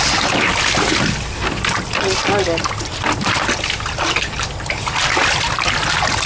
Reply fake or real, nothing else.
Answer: real